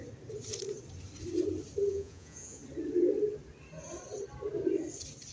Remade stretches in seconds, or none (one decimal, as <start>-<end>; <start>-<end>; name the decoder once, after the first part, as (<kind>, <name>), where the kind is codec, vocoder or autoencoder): 1.9-2.6 (vocoder, Vocos)